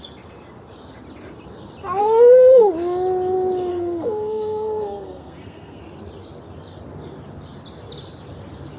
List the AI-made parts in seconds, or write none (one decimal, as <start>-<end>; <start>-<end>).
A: 2.0-2.7; 3.7-5.8